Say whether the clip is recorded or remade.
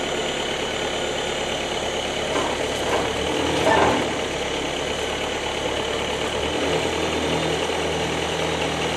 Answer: recorded